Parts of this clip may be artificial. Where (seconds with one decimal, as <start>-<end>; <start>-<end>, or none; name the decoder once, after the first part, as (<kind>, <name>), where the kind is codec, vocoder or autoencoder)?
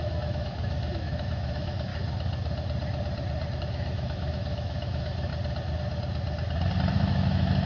0.0-1.9 (autoencoder, DAC-VAE); 3.6-5.3; 6.9-7.7